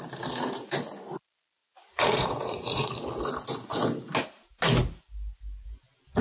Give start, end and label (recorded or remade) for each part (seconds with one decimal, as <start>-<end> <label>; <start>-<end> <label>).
0.0-1.6 recorded; 1.6-2.9 remade; 2.9-6.2 recorded